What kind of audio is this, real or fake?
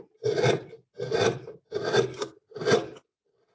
real